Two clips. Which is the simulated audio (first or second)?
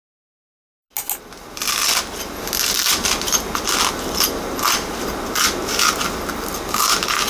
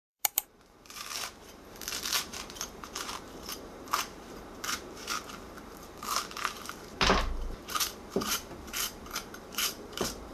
second